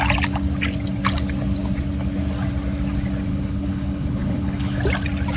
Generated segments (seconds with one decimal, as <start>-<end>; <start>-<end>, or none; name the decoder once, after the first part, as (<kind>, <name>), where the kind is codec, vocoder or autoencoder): 3.3-4.8 (codec, HILCodec)